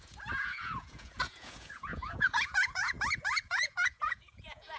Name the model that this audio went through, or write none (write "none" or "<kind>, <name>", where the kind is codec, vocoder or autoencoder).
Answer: vocoder, Vocos